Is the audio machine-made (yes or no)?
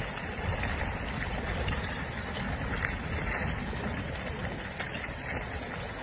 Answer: no